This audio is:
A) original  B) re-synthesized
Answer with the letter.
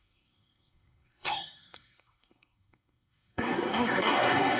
B